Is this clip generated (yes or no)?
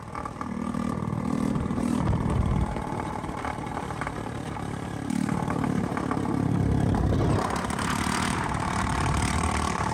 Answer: yes